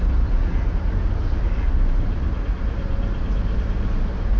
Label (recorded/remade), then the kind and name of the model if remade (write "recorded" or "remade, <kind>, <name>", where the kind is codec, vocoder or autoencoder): recorded